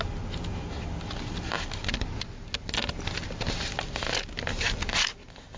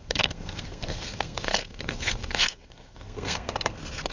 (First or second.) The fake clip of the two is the second